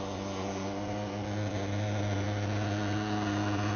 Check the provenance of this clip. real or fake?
real